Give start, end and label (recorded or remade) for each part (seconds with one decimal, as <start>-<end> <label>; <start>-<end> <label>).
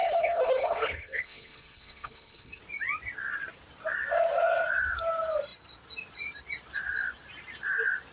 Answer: 0.0-2.6 remade; 2.6-8.1 recorded